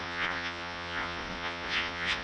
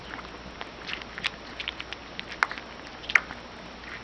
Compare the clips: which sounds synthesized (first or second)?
first